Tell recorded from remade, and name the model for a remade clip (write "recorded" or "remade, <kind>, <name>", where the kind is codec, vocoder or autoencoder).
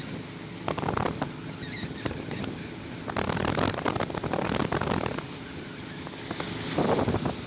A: recorded